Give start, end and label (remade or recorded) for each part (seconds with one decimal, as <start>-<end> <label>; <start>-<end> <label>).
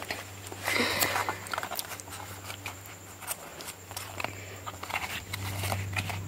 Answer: 0.0-1.2 recorded; 1.2-2.9 remade; 2.9-3.5 recorded; 3.5-5.2 remade; 5.2-6.3 recorded